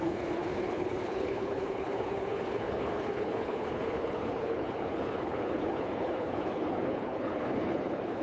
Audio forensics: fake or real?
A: fake